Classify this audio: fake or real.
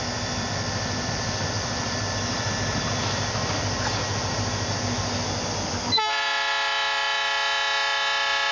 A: real